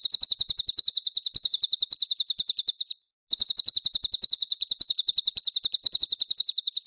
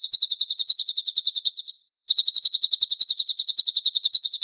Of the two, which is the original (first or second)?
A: first